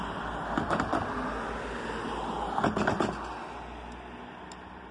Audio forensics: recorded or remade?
recorded